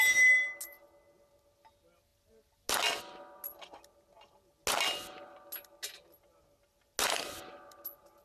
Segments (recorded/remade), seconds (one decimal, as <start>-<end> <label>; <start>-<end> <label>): 0.0-8.2 recorded